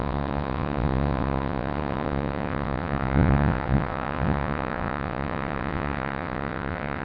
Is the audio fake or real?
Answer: fake